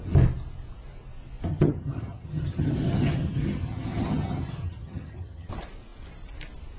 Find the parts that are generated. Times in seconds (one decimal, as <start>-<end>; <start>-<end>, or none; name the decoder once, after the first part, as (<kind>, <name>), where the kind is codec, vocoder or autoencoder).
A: 1.5-5.5 (vocoder, HiFi-GAN)